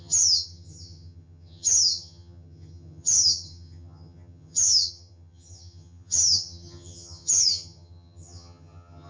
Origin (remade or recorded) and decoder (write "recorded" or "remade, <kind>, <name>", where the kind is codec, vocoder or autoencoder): remade, vocoder, HiFi-GAN